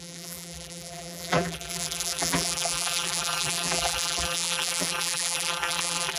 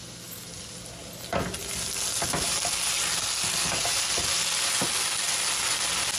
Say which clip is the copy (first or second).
first